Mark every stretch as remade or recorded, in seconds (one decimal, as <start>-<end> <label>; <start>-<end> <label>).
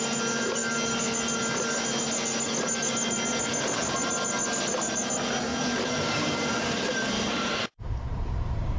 0.0-5.5 recorded; 5.5-8.8 remade